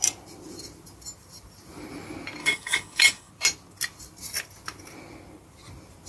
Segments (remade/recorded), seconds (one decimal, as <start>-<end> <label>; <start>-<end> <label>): 0.0-2.4 recorded; 2.4-3.3 remade; 3.3-6.1 recorded